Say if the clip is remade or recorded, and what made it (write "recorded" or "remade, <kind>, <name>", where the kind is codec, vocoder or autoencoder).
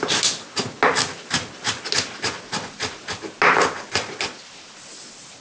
recorded